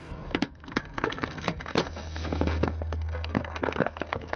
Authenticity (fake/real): fake